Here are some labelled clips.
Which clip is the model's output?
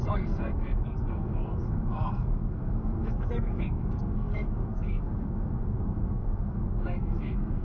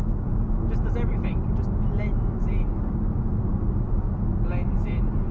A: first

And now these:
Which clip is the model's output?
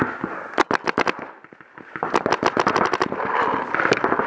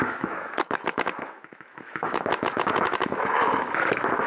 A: second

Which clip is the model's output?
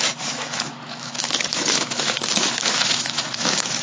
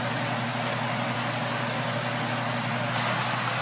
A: first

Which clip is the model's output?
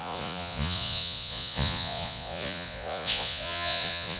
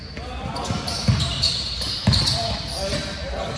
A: first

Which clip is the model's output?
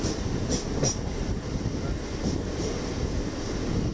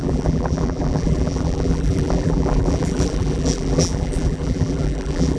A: second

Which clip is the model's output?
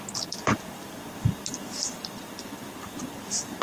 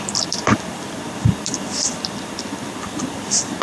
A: second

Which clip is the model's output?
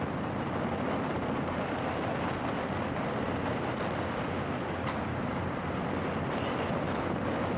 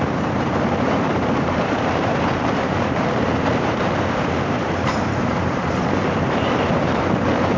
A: second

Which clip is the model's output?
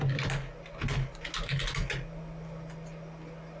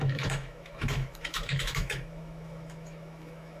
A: second